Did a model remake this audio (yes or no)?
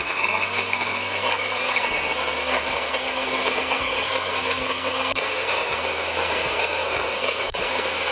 yes